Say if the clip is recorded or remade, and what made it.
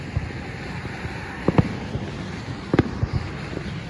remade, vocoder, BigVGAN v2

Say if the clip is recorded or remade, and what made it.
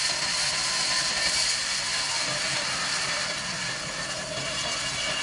recorded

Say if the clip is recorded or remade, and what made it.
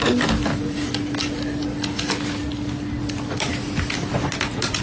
recorded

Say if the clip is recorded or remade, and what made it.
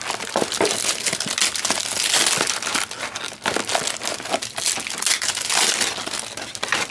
recorded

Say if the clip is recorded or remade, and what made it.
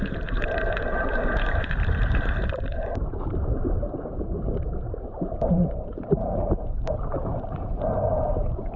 remade, vocoder, BigVGAN v2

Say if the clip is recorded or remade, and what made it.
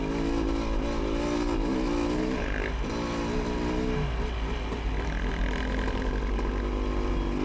recorded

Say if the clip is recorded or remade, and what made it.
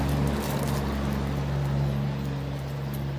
recorded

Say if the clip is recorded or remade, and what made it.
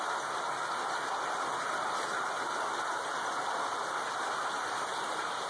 recorded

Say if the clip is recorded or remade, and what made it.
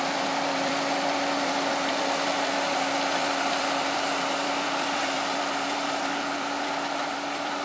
remade, vocoder, BigVGAN v2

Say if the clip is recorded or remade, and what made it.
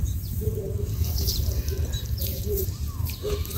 remade, vocoder, BigVGAN v2